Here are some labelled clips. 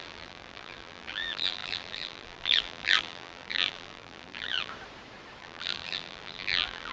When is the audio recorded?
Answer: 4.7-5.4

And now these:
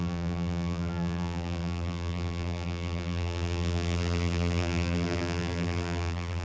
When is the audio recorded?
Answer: none

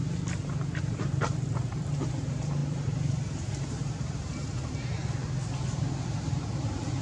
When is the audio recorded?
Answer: 0.0-0.8; 5.0-5.7